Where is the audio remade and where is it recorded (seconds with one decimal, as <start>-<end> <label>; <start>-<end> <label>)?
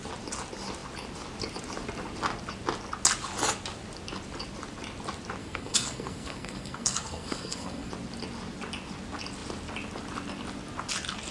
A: 0.0-5.4 recorded; 5.4-7.9 remade; 7.9-11.3 recorded